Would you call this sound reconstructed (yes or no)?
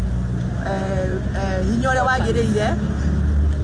no